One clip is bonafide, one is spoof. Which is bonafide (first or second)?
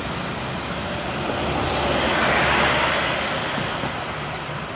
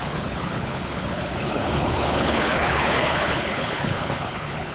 first